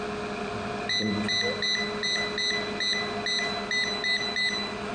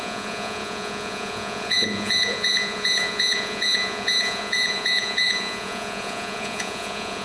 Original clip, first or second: first